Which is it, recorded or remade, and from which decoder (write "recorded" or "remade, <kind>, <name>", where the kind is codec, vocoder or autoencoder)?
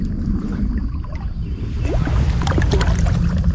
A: recorded